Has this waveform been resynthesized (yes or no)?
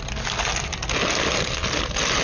no